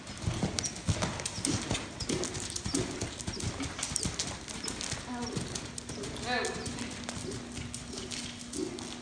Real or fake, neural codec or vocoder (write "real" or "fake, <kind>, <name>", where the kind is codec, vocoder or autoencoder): real